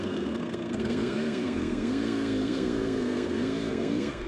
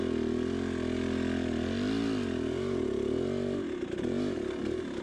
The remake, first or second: first